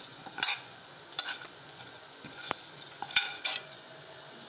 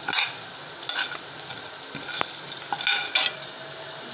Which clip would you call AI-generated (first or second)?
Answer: first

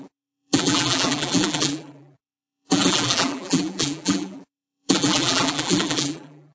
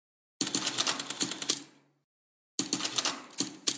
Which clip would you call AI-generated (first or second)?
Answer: first